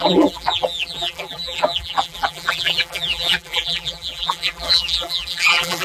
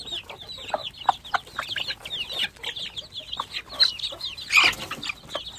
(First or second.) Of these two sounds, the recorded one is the second